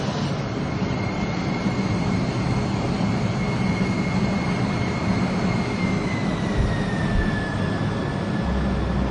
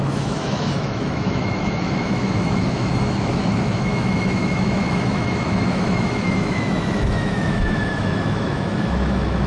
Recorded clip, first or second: first